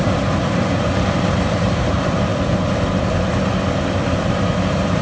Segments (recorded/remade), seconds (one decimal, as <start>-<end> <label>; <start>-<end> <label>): 0.0-2.3 remade; 2.3-3.8 recorded; 3.8-5.0 remade